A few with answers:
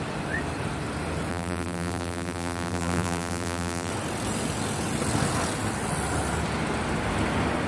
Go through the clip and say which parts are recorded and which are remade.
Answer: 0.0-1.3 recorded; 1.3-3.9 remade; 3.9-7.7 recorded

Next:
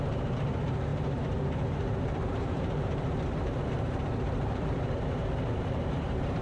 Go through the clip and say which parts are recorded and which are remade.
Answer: 0.0-6.4 remade

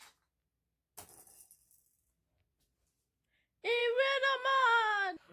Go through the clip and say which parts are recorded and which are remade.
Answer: 0.0-5.3 recorded

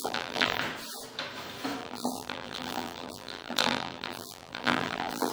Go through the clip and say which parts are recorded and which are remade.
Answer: 0.0-0.6 remade; 0.6-1.8 recorded; 1.8-5.3 remade

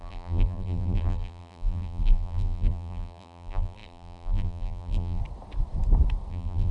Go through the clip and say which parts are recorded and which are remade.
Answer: 0.0-5.2 remade; 5.2-6.3 recorded; 6.3-6.7 remade

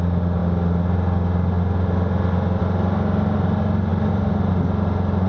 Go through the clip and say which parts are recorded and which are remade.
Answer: 0.0-3.9 recorded; 3.9-4.5 remade; 4.5-5.3 recorded

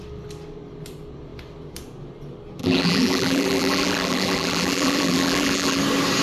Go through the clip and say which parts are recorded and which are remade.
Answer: 0.0-2.6 recorded; 2.6-5.8 remade; 5.8-6.2 recorded